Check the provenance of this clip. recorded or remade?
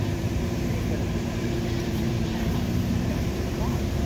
remade